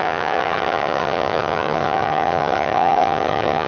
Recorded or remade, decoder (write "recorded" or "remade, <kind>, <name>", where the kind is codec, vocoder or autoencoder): remade, vocoder, HiFi-GAN